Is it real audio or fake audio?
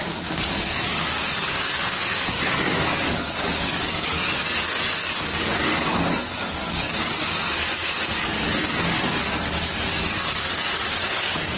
fake